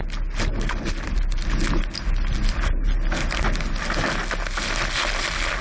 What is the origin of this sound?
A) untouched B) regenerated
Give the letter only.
A